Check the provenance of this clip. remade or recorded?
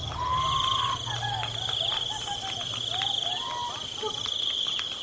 recorded